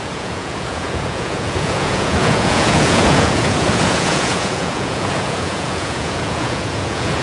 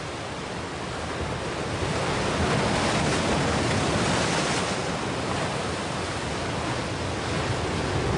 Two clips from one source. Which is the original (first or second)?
second